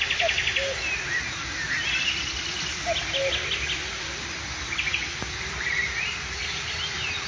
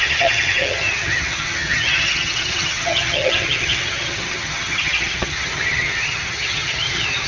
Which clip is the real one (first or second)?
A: first